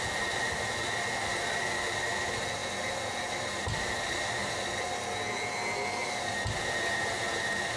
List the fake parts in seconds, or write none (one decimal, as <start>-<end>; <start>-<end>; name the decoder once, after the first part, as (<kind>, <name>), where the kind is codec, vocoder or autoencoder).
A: none